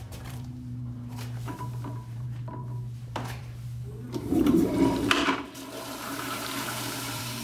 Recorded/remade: remade